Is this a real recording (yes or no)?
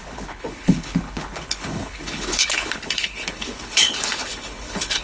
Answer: no